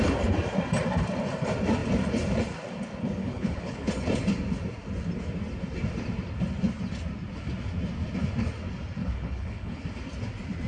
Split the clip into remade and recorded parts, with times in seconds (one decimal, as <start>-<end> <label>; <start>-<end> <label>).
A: 0.0-3.2 recorded; 3.2-3.9 remade; 3.9-9.0 recorded; 9.0-9.8 remade; 9.8-10.7 recorded